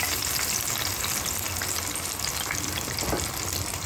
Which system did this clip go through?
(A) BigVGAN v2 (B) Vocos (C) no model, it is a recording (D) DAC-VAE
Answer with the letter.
C